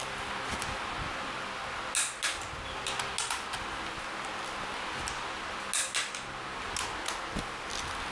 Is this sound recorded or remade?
recorded